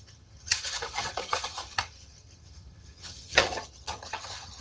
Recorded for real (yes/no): no